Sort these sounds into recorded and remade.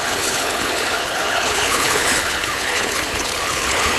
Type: remade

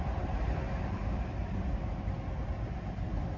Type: recorded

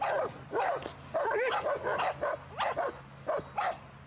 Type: recorded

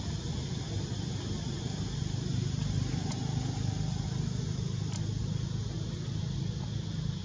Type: recorded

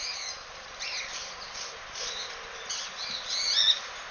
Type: recorded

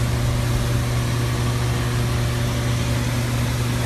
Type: recorded